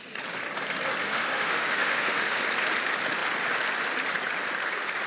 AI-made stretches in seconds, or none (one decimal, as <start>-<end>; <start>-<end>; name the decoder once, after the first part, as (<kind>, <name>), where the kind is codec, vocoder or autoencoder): 1.0-2.4 (autoencoder, DAC-VAE)